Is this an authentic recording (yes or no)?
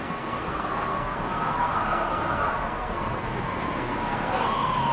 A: no